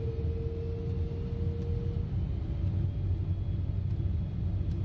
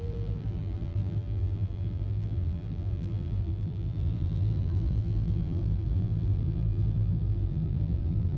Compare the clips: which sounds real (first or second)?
first